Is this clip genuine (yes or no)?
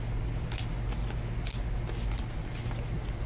yes